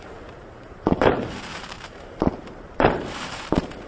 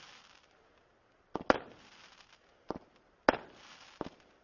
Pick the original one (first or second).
second